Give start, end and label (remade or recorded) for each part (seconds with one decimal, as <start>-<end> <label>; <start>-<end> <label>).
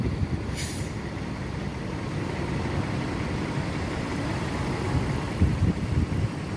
0.0-1.7 recorded; 1.7-2.5 remade; 2.5-6.6 recorded